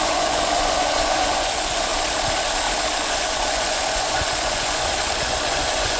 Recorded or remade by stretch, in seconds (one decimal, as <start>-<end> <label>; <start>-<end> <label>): 0.0-1.9 remade; 1.9-3.0 recorded; 3.0-6.0 remade